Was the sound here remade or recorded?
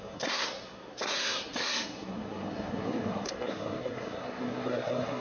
remade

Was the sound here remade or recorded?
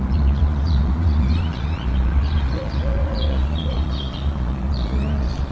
remade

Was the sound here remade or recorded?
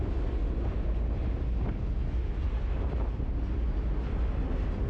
recorded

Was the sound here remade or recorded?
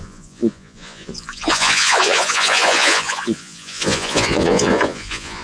remade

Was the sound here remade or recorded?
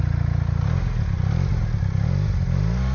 recorded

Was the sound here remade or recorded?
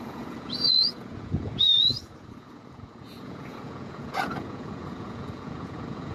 remade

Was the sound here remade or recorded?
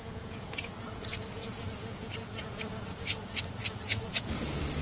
remade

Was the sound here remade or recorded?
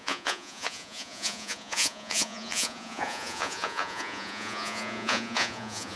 remade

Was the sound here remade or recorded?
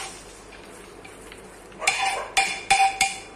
recorded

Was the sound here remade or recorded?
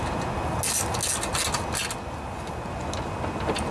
recorded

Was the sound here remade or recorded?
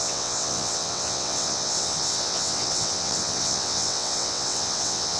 remade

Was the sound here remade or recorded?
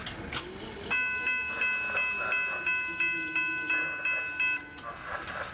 recorded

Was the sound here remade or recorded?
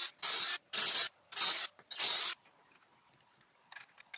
recorded